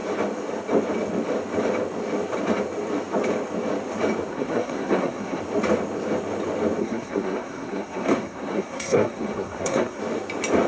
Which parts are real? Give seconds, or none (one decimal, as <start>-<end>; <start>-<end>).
0.0-4.3; 5.4-6.8; 10.0-10.7